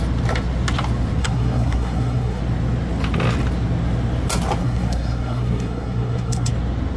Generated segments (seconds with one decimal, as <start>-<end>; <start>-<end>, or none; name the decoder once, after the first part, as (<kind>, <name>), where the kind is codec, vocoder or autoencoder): 1.2-2.4 (codec, SNAC); 4.6-6.5